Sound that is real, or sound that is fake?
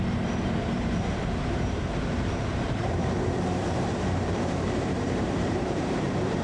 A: fake